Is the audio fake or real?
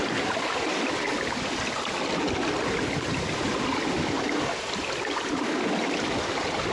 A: real